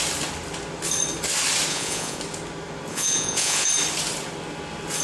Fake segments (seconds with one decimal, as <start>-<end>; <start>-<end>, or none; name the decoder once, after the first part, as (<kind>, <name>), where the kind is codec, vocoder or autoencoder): 1.7-2.2 (vocoder, Vocos); 2.9-3.7